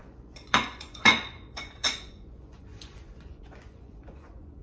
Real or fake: fake